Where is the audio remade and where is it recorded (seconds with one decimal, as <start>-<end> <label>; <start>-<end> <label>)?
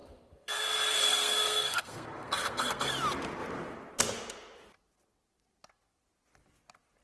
0.0-2.9 remade; 2.9-7.0 recorded